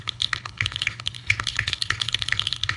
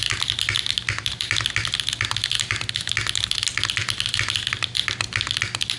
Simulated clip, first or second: first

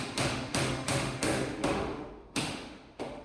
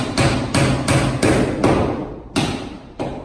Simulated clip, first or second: first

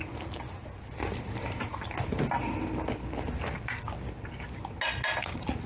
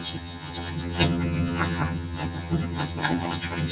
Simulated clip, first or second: second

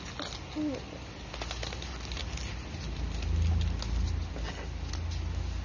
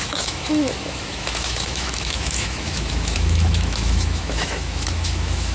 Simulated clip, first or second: second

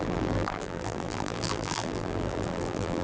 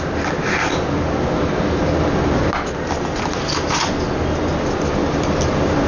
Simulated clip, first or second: first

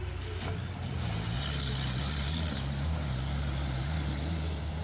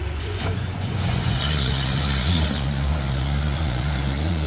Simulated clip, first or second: second